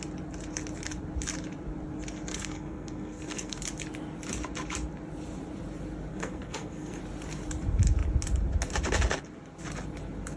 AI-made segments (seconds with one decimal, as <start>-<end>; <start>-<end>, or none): 2.3-3.6; 6.1-7.0